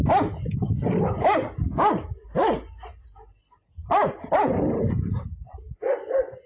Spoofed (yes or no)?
no